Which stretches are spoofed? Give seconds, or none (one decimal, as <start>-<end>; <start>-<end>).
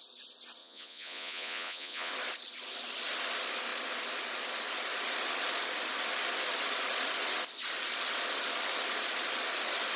0.6-2.1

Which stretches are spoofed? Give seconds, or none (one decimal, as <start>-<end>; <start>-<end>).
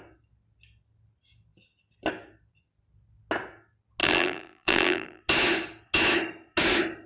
4.0-5.2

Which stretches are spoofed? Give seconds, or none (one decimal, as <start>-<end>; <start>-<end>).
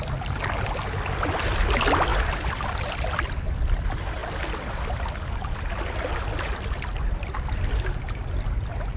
2.1-3.4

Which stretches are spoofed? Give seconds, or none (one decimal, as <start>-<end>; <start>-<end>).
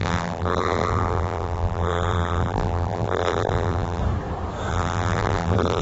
0.0-4.0; 4.7-5.8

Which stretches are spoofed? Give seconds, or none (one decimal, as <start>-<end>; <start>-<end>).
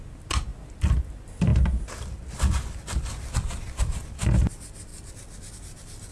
none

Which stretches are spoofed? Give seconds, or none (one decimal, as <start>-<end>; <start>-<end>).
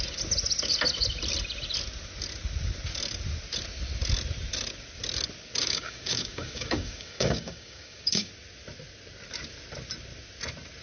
5.6-8.3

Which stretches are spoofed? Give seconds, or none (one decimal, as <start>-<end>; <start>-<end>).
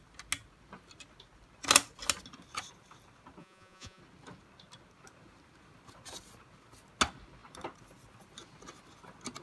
3.4-4.0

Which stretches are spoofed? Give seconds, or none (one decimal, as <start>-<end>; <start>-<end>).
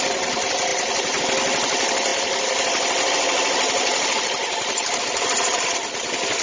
0.7-1.2; 2.1-5.2